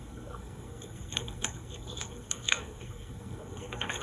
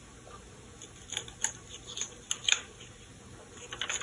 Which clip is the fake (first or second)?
first